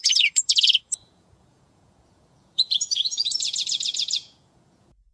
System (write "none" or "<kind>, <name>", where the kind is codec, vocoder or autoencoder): vocoder, Vocos